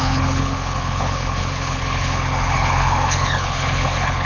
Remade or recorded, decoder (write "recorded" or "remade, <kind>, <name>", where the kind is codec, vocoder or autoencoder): remade, codec, HILCodec